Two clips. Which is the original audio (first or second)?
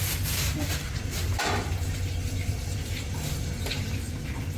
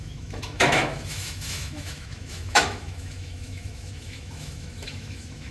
first